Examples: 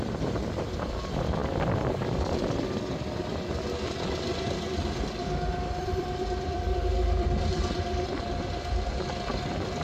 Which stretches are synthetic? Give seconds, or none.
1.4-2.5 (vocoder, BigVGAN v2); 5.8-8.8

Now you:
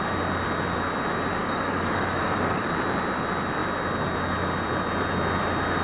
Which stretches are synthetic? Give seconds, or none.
1.4-2.7 (codec, DAC)

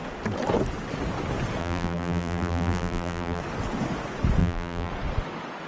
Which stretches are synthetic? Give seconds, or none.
1.6-3.4 (vocoder, BigVGAN v2); 4.4-4.9

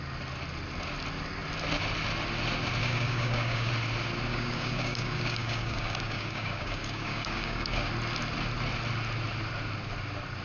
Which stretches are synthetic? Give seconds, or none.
2.8-3.7 (codec, DAC); 4.3-7.9

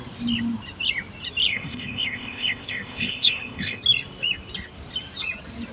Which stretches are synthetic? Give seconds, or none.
1.5-3.8 (codec, ZipCodec)